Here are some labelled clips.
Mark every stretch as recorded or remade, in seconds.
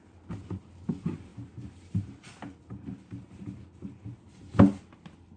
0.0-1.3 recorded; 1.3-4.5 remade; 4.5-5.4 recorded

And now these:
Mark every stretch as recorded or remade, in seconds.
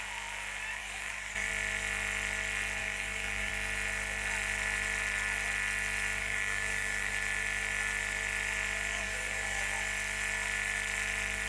0.0-0.8 recorded; 0.8-1.5 remade; 1.5-2.8 recorded; 2.8-3.5 remade; 3.5-6.2 recorded; 6.2-7.1 remade; 7.1-8.9 recorded; 8.9-9.6 remade; 9.6-11.5 recorded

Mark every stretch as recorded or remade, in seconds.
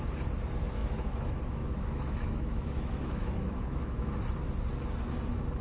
0.0-0.8 recorded; 0.8-4.2 remade; 4.2-5.6 recorded